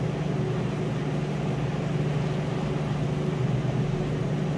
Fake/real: real